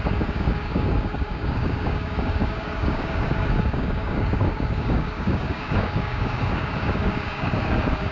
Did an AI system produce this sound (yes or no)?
yes